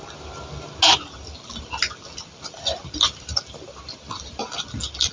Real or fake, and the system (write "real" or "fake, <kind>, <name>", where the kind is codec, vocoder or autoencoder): real